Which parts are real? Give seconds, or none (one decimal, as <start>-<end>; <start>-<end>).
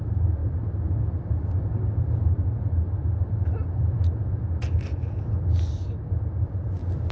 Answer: 5.0-6.1